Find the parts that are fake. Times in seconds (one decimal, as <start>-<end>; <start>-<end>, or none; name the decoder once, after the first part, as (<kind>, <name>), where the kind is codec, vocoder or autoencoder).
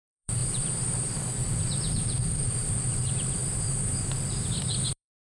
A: 0.0-3.4 (vocoder, BigVGAN v2); 4.9-5.4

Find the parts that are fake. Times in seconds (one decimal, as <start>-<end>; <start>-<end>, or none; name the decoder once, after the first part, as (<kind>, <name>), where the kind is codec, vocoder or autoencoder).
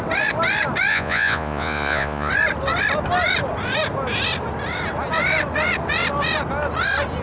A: 0.9-2.3 (vocoder, Vocos)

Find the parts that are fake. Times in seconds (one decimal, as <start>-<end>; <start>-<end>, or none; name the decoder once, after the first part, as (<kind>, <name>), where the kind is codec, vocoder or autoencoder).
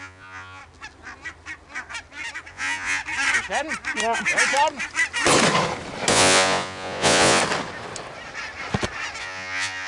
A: 0.0-0.6 (vocoder, Vocos); 2.5-3.0; 6.1-7.4; 9.2-9.9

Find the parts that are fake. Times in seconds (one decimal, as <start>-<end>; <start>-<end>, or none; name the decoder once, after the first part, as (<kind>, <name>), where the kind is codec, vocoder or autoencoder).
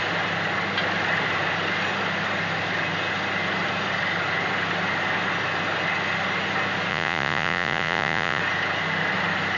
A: 6.9-8.4 (vocoder, Vocos)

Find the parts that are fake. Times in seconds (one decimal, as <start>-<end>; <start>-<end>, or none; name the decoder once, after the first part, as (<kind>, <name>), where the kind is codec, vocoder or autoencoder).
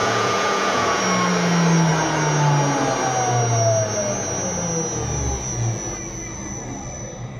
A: 0.0-1.0 (vocoder, Vocos)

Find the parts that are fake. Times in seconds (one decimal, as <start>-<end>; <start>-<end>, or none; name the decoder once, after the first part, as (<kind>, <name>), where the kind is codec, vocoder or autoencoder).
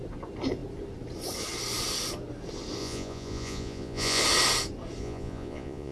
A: 2.8-4.2 (vocoder, Vocos); 5.0-5.9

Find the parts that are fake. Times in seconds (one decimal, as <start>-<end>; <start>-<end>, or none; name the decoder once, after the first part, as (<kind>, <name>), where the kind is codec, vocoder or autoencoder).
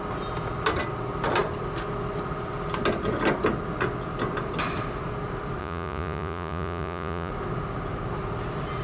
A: 5.6-7.3 (vocoder, Vocos)